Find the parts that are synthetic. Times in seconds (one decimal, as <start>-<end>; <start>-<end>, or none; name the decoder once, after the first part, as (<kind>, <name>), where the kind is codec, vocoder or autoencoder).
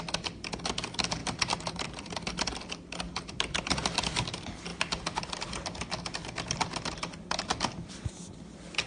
none